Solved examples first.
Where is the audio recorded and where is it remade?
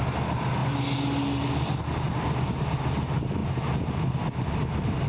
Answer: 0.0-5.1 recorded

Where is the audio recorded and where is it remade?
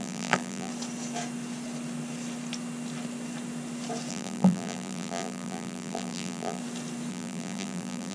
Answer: 0.0-0.7 remade; 0.7-4.1 recorded; 4.1-6.6 remade; 6.6-7.1 recorded; 7.1-8.1 remade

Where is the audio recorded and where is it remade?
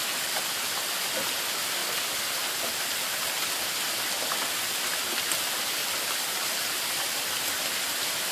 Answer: 0.0-8.3 recorded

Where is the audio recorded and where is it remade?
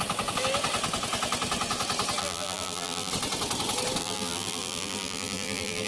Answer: 0.0-2.2 recorded; 2.2-3.1 remade; 3.1-4.0 recorded; 4.0-5.9 remade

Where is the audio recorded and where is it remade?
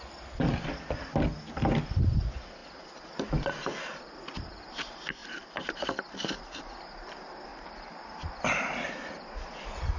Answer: 0.0-7.5 recorded; 7.5-8.3 remade; 8.3-10.0 recorded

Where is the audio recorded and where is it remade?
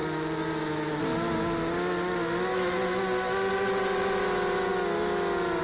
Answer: 0.0-5.6 recorded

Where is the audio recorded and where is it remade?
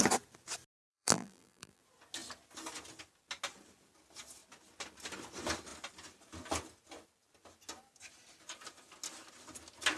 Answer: 0.0-0.9 recorded; 0.9-1.8 remade; 1.8-10.0 recorded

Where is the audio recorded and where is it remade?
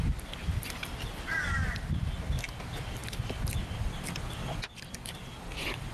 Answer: 0.0-5.9 recorded